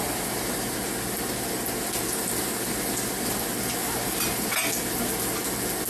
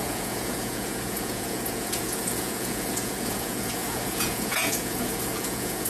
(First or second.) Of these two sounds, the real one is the first